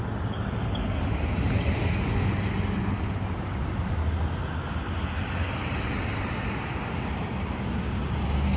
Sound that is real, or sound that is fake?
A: real